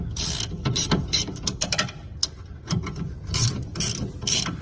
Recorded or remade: remade